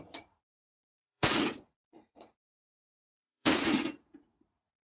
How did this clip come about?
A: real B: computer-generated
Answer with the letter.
B